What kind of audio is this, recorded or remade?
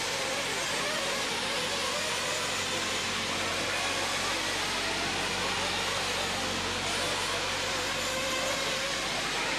recorded